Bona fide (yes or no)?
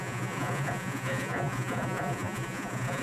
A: no